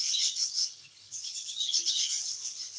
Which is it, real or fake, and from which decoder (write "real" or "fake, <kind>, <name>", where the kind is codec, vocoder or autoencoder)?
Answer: fake, codec, HILCodec